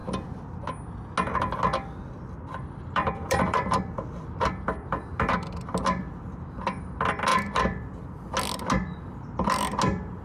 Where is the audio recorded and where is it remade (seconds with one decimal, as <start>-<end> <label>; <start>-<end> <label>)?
0.0-2.8 recorded; 2.8-5.3 remade; 5.3-10.2 recorded